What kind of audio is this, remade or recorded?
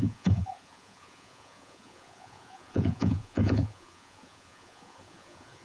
remade